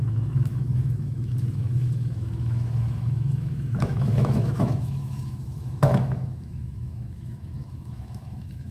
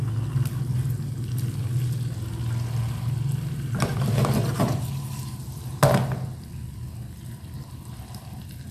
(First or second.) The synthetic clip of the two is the first